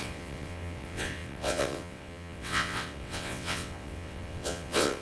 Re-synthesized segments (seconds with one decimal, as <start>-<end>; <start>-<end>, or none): 0.0-5.0